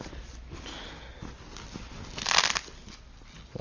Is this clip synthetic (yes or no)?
no